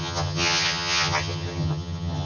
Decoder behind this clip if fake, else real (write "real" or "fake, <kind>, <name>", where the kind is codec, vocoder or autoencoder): fake, vocoder, HiFi-GAN